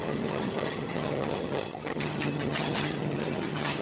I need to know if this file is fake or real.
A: fake